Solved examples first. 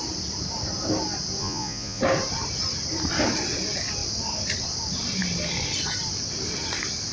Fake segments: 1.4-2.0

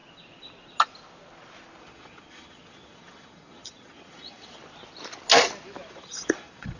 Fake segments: 1.8-4.6; 5.9-6.8

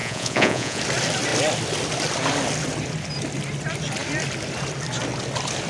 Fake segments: 0.0-0.8

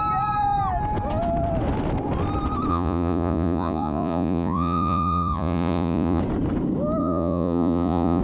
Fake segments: 2.7-6.2; 7.0-8.2

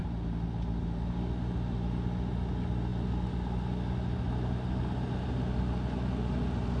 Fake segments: none